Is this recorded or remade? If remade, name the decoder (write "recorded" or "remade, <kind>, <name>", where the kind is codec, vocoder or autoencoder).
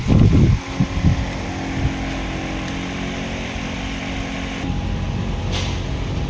recorded